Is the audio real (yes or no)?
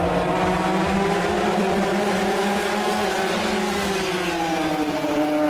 yes